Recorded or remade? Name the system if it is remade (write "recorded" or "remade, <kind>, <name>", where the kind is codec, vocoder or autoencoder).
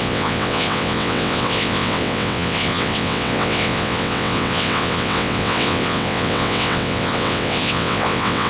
remade, vocoder, WaveNeXt